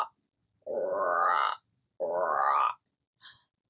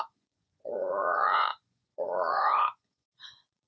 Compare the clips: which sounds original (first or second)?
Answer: first